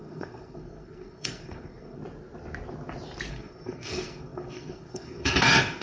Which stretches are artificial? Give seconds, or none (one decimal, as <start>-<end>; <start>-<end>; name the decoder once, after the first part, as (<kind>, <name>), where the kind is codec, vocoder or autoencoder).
0.0-2.0 (codec, SNAC); 3.3-5.8